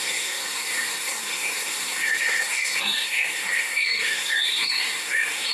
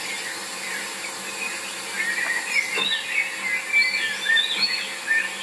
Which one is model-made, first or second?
first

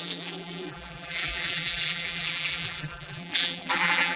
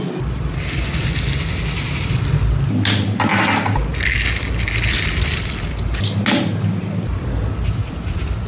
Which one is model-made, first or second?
first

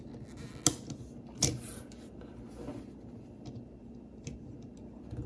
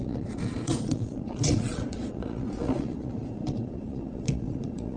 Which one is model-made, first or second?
second